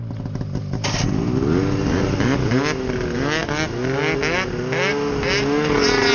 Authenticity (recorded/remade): recorded